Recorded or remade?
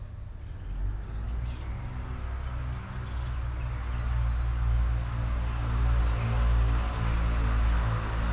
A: recorded